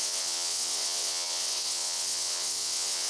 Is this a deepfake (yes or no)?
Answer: yes